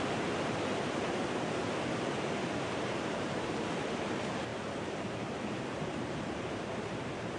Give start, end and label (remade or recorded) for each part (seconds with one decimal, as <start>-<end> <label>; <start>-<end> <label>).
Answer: 0.0-7.4 remade